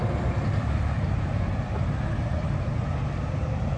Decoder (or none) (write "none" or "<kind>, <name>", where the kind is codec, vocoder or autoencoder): none